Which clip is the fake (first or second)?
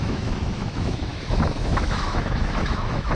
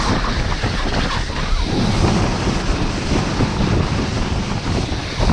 first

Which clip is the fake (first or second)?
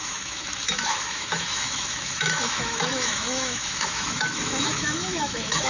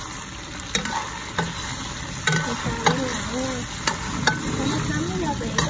first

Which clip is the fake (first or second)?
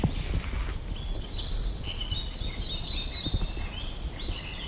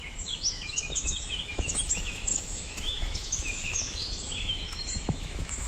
second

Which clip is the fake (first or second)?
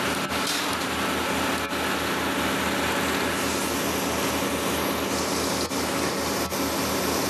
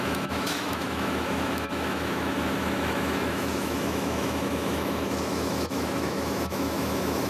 second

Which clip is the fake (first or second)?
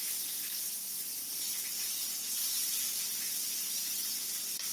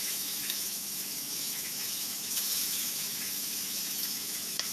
second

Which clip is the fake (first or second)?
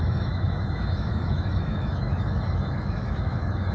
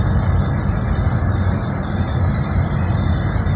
first